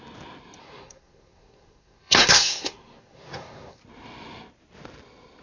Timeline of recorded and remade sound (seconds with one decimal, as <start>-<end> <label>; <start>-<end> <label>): 0.0-0.6 recorded; 0.6-3.8 remade; 3.8-5.4 recorded

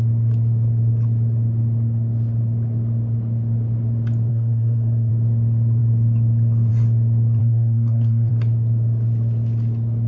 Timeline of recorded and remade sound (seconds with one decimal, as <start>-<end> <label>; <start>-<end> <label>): 0.0-4.3 recorded; 4.3-5.1 remade; 5.1-7.4 recorded; 7.4-8.3 remade; 8.3-10.1 recorded

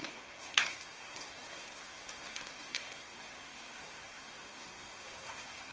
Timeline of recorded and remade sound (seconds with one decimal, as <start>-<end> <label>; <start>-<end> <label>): 0.0-5.7 remade

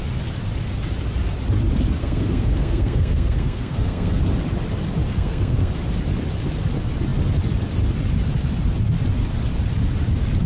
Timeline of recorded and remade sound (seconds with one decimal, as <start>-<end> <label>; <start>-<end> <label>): 0.0-2.0 recorded; 2.0-4.2 remade; 4.2-5.1 recorded; 5.1-5.7 remade; 5.7-10.5 recorded

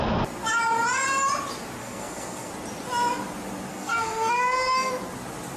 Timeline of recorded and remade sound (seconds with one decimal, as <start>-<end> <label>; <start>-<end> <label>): 0.0-1.8 recorded; 1.8-2.5 remade; 2.5-3.7 recorded; 3.7-4.9 remade; 4.9-5.6 recorded

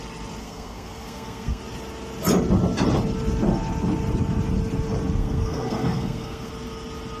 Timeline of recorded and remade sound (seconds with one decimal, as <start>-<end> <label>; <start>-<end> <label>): 0.0-0.4 recorded; 0.4-1.6 remade; 1.6-5.2 recorded; 5.2-6.5 remade; 6.5-7.2 recorded

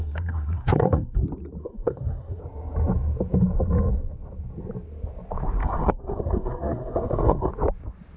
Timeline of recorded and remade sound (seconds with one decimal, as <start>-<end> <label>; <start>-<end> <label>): 0.0-1.2 remade; 1.2-1.6 recorded; 1.6-2.4 remade; 2.4-5.6 recorded; 5.6-7.5 remade; 7.5-8.2 recorded